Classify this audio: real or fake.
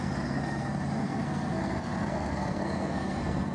fake